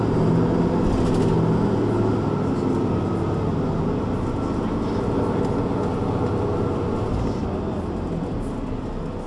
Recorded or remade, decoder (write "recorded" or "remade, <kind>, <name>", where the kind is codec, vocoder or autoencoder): recorded